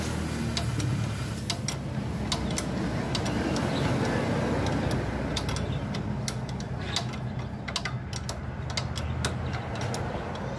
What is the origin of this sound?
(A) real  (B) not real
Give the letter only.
A